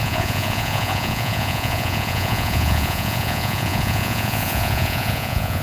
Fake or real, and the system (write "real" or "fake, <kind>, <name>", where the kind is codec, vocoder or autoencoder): fake, vocoder, Vocos